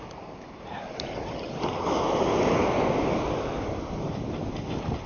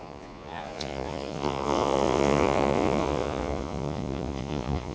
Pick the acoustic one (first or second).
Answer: first